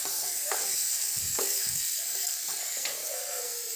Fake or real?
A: fake